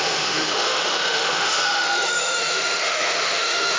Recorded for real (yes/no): no